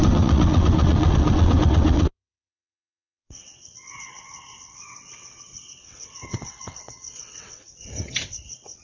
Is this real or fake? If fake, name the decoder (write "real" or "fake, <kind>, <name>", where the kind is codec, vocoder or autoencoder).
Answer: fake, vocoder, WaveNeXt